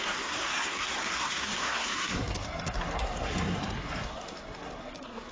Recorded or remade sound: remade